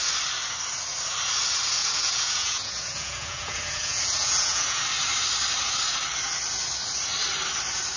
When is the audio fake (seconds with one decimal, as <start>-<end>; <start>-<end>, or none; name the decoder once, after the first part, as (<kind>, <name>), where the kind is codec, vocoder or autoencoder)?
1.8-4.8 (vocoder, Vocos)